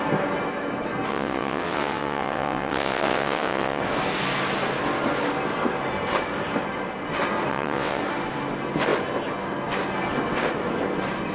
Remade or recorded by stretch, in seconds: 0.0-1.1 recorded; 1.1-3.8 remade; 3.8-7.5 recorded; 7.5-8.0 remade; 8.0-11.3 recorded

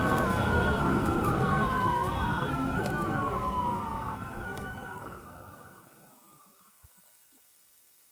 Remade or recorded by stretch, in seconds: 0.0-8.1 remade